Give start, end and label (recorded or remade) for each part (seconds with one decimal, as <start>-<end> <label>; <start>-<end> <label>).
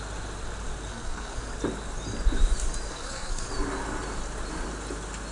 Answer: 0.0-0.9 recorded; 0.9-1.5 remade; 1.5-2.9 recorded; 2.9-3.5 remade; 3.5-5.3 recorded